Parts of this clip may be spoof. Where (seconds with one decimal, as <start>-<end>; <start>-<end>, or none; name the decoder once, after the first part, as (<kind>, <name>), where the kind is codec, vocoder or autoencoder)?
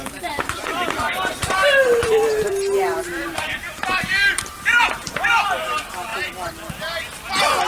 0.0-6.1 (vocoder, BigVGAN v2)